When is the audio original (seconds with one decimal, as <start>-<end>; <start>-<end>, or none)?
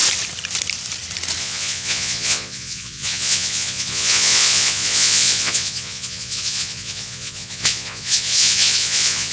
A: 0.0-1.4